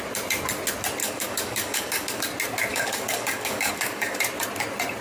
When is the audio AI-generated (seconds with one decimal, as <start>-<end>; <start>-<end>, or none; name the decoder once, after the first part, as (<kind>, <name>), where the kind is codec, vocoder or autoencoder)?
1.0-2.2 (codec, DAC); 2.7-4.2

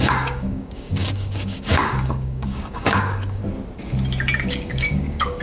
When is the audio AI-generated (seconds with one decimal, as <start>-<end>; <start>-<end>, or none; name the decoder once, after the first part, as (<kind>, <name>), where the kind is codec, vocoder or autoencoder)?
0.0-3.4 (codec, DAC); 4.5-5.4

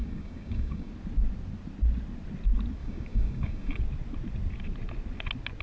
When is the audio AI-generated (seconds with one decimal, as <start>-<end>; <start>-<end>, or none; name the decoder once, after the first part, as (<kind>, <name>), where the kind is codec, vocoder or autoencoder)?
0.0-0.9 (codec, DAC); 2.8-3.8

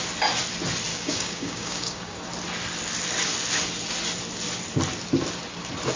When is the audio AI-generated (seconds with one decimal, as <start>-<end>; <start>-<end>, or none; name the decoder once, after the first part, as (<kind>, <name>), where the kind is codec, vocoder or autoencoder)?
0.9-2.2 (codec, DAC)

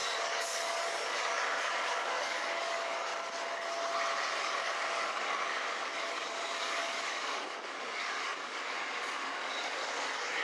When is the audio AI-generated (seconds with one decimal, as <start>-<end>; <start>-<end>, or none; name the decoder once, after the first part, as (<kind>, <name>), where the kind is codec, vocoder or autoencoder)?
0.0-3.1 (codec, DAC); 4.3-10.4